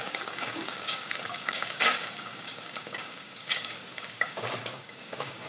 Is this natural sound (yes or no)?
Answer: no